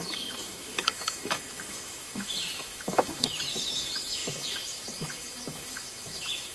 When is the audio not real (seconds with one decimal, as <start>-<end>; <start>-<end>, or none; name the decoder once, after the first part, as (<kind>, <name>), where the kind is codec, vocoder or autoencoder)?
0.0-6.5 (autoencoder, DAC-VAE)